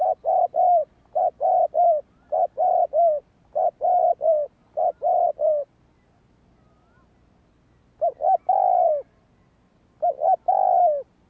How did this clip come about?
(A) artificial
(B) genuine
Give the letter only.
B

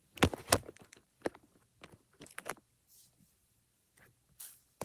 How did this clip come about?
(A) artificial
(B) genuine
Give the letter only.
A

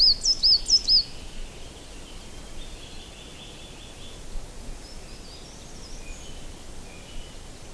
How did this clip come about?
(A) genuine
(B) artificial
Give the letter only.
A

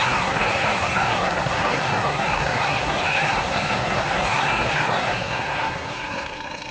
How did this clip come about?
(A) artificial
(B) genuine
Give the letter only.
A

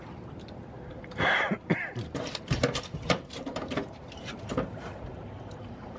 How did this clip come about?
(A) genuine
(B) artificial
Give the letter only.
B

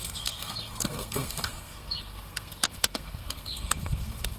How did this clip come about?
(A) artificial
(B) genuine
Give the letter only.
A